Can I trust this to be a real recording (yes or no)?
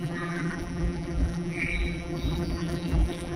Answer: no